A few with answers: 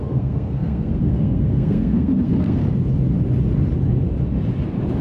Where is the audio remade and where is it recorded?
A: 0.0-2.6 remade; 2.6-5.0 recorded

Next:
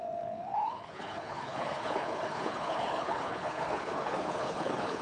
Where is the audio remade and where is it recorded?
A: 0.0-5.0 remade

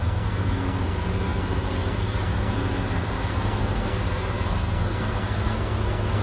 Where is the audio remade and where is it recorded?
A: 0.0-6.2 remade

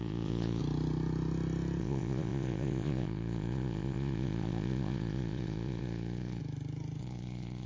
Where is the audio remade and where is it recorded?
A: 0.0-0.6 remade; 0.6-1.8 recorded; 1.8-6.4 remade; 6.4-7.0 recorded; 7.0-7.7 remade

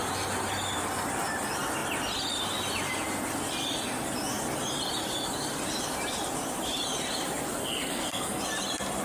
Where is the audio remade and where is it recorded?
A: 0.0-7.6 recorded; 7.6-8.4 remade; 8.4-9.0 recorded